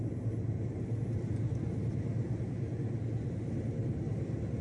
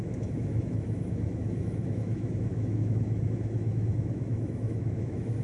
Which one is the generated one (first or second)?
second